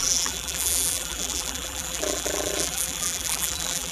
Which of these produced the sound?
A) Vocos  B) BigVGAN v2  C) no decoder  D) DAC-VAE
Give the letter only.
B